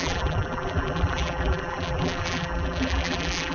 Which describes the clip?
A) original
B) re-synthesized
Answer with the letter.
B